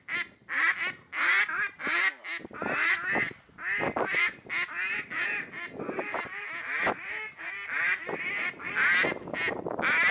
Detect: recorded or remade recorded